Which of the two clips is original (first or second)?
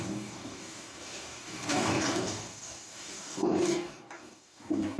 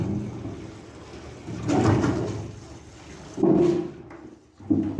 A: second